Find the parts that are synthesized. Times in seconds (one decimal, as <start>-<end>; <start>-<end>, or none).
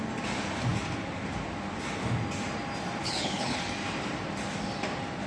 3.0-3.6